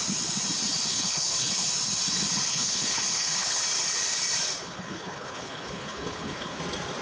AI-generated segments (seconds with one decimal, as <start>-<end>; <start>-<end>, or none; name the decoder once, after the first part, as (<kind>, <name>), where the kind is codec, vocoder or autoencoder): 0.9-1.7 (codec, HILCodec); 2.5-3.6; 4.6-6.6

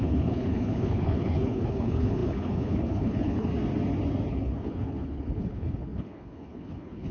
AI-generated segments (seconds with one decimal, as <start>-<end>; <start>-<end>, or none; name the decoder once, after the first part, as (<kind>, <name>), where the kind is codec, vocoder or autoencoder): 0.0-3.5 (codec, HILCodec); 4.3-7.1

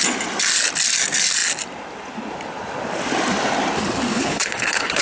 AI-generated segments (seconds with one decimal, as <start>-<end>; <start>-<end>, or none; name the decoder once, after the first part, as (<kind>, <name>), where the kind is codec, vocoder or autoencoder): 4.1-5.0 (codec, HILCodec)

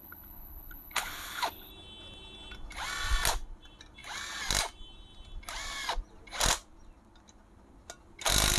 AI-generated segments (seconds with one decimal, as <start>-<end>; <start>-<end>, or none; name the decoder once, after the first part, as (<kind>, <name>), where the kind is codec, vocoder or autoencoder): 0.0-1.7 (codec, HILCodec)

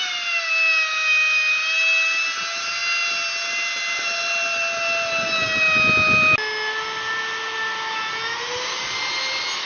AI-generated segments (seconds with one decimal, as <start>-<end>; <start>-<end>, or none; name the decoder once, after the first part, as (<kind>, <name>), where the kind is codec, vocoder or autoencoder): none